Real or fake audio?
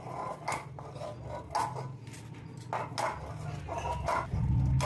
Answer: real